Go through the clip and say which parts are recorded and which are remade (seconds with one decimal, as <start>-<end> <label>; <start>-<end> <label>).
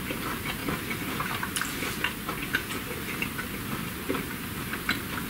0.0-5.3 recorded